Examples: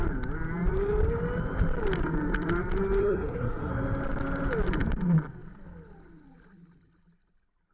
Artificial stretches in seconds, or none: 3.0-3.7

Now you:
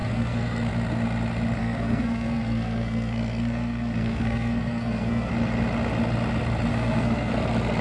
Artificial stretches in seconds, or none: 0.0-0.7; 1.6-5.3; 6.7-7.3

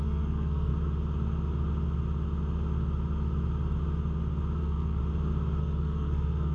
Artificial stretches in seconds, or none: 0.0-0.7; 4.6-5.0; 5.6-6.5

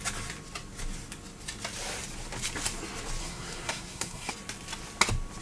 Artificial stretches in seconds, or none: 3.2-4.3

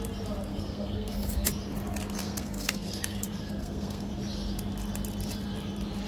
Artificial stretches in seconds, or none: 0.5-1.5; 2.2-4.1

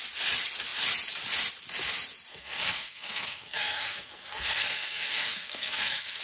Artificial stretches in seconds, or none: 2.3-6.2

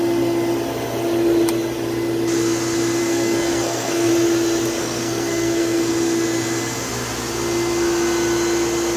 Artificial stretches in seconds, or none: 3.0-4.1; 4.8-5.9